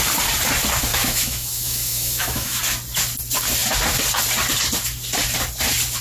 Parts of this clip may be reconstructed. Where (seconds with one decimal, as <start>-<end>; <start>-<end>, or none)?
0.9-2.6